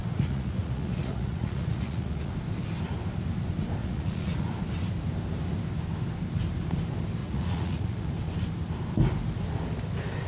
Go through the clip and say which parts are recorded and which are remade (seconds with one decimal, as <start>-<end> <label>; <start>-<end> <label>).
0.0-2.3 remade; 2.3-3.8 recorded; 3.8-4.5 remade; 4.5-7.2 recorded; 7.2-8.1 remade; 8.1-10.3 recorded